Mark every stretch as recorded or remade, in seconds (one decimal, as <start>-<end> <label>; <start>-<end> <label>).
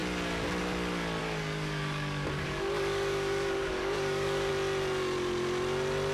0.0-1.2 recorded; 1.2-4.5 remade; 4.5-6.1 recorded